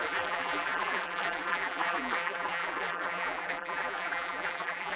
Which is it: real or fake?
fake